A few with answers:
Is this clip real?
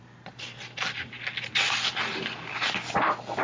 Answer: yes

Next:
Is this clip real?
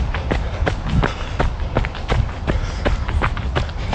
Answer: yes